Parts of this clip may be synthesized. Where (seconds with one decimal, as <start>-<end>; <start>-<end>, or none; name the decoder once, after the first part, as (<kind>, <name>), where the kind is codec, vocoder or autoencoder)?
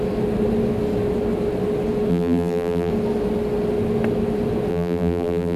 2.1-2.9 (vocoder, BigVGAN v2); 4.7-5.6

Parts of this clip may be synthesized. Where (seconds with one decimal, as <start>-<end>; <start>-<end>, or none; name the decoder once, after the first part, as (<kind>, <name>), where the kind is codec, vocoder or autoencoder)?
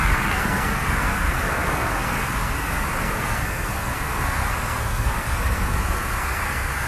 0.0-6.9 (codec, SNAC)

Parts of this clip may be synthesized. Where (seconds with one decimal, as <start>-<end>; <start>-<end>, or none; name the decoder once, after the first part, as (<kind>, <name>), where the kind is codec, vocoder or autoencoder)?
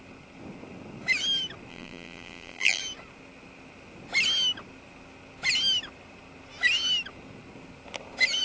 1.7-2.8 (vocoder, BigVGAN v2)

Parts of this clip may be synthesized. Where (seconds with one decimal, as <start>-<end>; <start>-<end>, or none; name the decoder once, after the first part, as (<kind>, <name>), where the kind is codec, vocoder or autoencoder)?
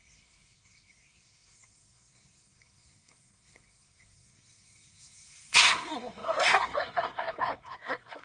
0.0-8.2 (codec, SNAC)